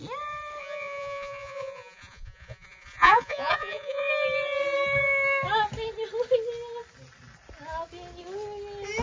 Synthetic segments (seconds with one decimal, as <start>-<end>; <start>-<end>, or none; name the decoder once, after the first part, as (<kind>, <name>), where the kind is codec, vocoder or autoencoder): 0.6-4.1 (vocoder, Vocos)